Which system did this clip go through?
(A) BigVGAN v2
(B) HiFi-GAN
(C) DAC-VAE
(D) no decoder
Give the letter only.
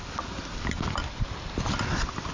D